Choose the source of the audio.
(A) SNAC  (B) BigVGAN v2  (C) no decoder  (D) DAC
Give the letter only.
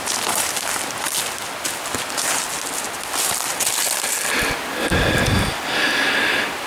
C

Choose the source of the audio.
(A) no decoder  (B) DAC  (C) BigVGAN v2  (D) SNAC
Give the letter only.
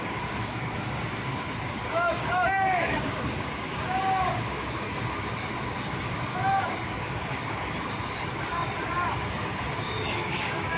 B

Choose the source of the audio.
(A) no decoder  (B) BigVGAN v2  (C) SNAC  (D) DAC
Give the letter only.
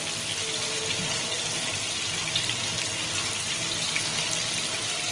A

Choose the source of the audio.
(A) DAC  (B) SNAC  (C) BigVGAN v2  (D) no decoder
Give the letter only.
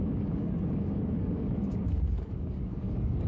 A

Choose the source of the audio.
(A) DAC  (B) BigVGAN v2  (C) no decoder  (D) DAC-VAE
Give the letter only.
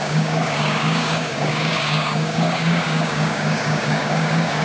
A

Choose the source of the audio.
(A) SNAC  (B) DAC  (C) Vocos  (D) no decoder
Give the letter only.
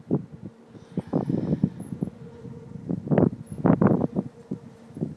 D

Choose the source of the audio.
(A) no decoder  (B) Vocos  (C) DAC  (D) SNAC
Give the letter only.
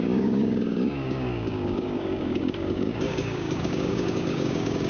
C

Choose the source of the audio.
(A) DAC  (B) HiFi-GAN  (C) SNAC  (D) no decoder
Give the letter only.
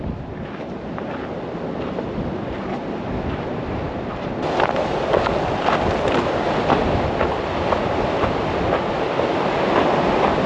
D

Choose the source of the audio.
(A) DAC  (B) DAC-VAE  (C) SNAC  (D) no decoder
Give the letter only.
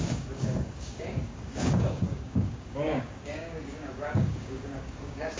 A